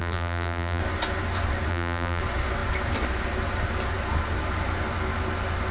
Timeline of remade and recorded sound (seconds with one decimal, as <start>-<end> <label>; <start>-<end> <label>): 0.0-0.8 remade; 0.8-1.7 recorded; 1.7-2.2 remade; 2.2-5.7 recorded